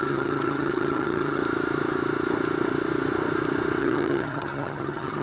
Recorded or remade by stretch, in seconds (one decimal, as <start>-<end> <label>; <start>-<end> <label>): 0.0-1.4 remade; 1.4-3.8 recorded; 3.8-5.2 remade